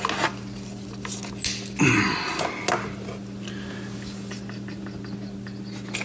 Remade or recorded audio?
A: recorded